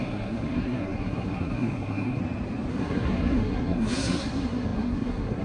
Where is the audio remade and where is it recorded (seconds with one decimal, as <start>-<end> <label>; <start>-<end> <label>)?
0.0-2.2 remade; 2.2-2.7 recorded; 2.7-5.4 remade